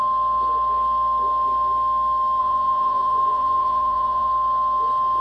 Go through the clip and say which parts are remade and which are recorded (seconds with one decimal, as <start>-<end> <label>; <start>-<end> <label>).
0.0-2.4 recorded; 2.4-4.3 remade; 4.3-5.2 recorded